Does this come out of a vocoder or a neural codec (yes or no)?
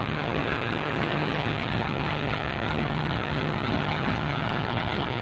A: yes